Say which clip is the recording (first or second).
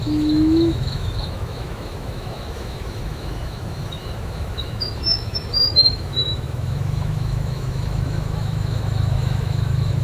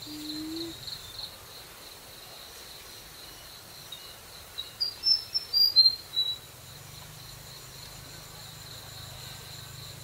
second